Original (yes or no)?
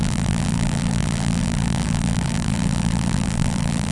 no